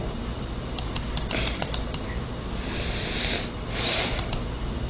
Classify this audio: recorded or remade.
recorded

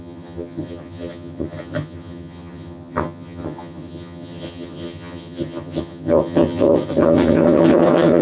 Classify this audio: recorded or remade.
remade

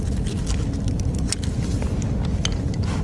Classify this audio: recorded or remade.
recorded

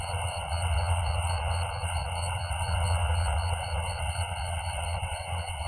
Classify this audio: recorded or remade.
remade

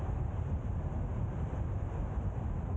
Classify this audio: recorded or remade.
recorded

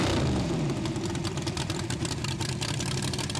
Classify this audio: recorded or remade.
remade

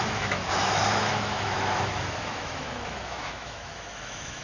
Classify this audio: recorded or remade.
remade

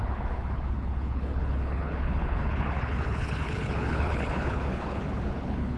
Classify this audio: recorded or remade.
remade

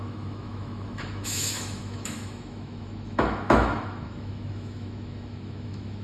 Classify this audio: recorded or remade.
remade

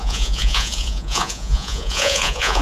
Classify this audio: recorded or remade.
remade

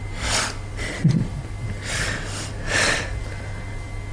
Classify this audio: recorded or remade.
recorded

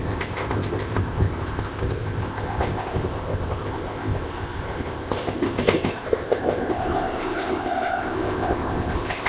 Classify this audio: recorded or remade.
remade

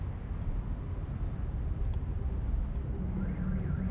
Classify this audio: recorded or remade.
recorded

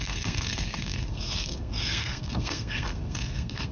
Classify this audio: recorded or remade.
remade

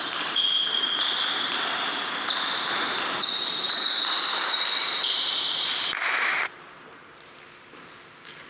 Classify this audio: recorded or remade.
remade